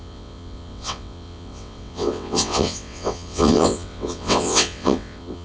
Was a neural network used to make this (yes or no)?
yes